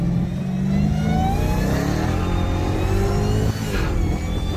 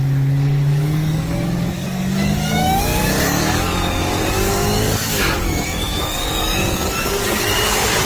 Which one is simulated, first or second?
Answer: second